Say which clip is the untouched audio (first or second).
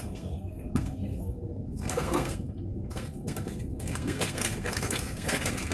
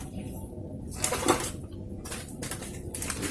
second